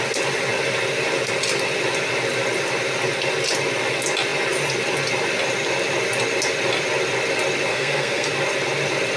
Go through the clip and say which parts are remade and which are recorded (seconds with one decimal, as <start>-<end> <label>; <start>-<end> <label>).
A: 0.0-7.7 recorded; 7.7-8.3 remade; 8.3-9.2 recorded